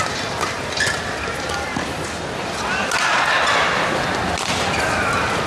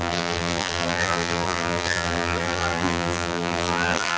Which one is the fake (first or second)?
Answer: second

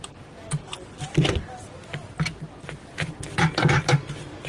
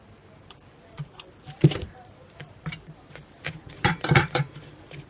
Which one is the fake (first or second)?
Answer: second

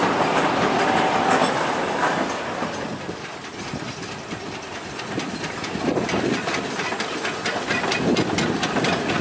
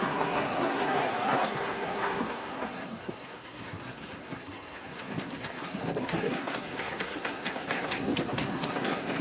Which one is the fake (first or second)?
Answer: second